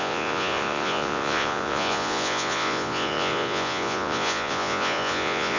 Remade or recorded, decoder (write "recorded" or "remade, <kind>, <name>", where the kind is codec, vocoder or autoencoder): remade, vocoder, Vocos